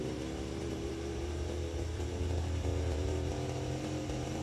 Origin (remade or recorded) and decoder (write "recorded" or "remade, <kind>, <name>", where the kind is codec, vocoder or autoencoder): remade, vocoder, BigVGAN v2